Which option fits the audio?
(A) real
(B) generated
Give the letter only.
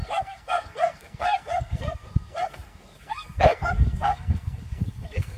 B